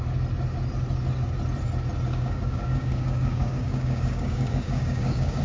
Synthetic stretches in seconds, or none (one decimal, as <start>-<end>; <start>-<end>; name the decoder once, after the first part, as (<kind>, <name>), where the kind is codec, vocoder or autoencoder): 2.1-5.4 (codec, DAC)